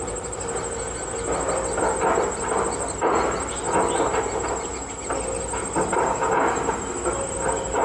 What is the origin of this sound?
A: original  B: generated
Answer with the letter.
A